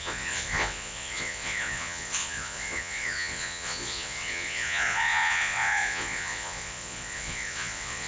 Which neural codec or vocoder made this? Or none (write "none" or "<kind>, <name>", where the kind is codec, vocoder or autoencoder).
vocoder, Vocos